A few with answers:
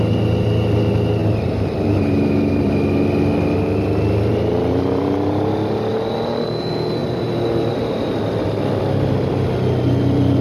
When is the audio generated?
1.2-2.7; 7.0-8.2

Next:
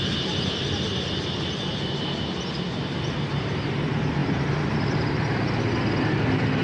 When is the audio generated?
4.2-5.1